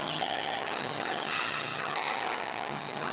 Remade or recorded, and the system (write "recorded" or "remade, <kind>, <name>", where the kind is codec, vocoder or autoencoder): remade, vocoder, HiFi-GAN